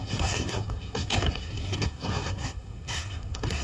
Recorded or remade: remade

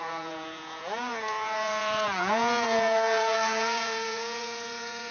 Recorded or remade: remade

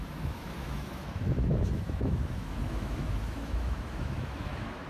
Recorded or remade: remade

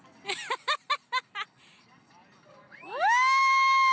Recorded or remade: recorded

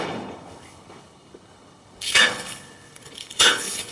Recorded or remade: remade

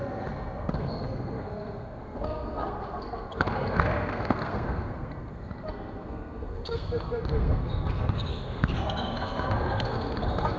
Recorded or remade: remade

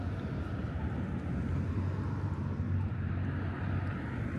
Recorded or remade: recorded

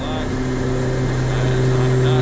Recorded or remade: recorded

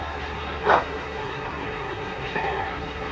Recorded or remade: remade